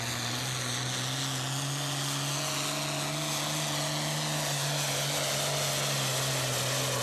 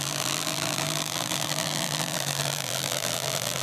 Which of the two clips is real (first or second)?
first